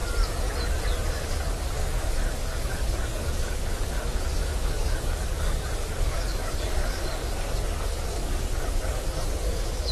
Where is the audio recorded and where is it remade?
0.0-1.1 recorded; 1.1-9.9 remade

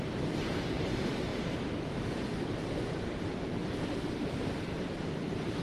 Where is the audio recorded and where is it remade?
0.0-5.6 remade

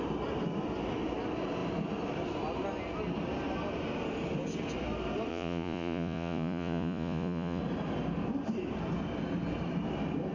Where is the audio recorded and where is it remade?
0.0-5.3 recorded; 5.3-7.6 remade; 7.6-10.3 recorded

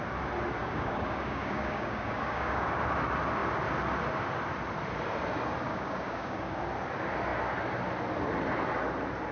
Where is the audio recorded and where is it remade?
0.0-0.6 recorded; 0.6-2.7 remade; 2.7-5.7 recorded; 5.7-6.6 remade; 6.6-9.3 recorded